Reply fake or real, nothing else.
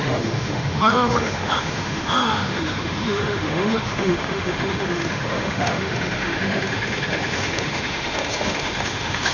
fake